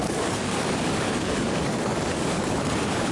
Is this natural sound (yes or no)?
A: no